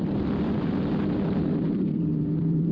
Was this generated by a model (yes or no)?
yes